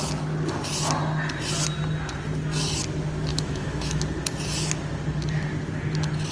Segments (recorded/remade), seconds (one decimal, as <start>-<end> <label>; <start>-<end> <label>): 0.0-3.3 recorded; 3.3-4.0 remade; 4.0-6.3 recorded